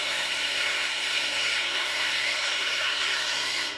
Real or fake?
fake